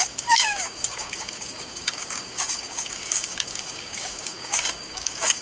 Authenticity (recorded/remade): remade